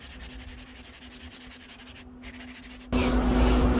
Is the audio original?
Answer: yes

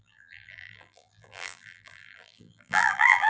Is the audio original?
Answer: no